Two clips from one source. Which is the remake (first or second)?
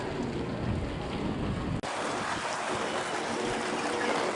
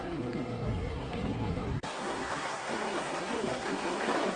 second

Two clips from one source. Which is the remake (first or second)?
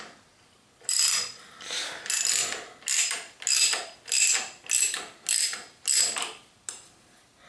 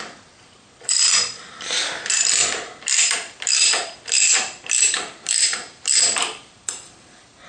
second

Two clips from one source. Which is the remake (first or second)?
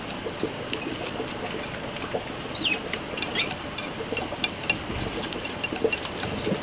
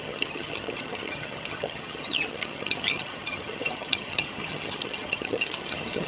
second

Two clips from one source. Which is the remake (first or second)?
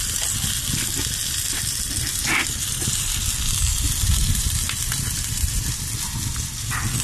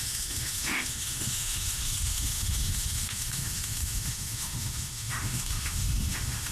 second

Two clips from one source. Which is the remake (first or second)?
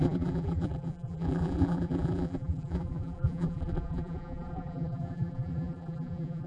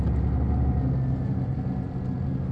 first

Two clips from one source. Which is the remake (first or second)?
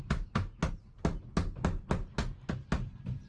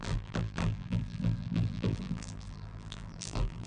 second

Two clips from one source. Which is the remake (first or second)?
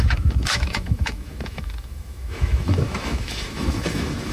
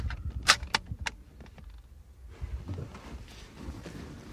first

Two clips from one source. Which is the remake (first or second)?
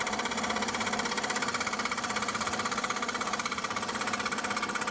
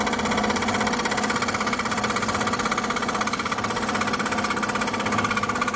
first